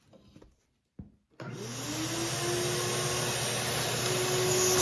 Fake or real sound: real